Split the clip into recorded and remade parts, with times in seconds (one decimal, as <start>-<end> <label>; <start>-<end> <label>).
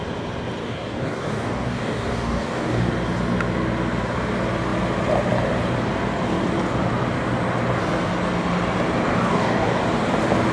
0.0-0.6 recorded; 0.6-2.9 remade; 2.9-9.1 recorded; 9.1-9.8 remade; 9.8-10.5 recorded